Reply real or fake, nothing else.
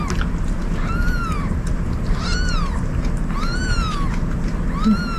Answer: real